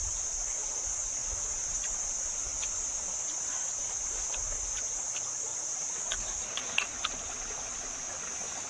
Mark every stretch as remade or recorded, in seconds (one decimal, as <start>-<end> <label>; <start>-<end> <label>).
0.0-1.2 recorded; 1.2-2.1 remade; 2.1-5.5 recorded; 5.5-7.7 remade; 7.7-8.7 recorded